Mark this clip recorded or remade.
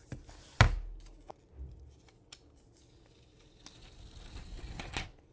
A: recorded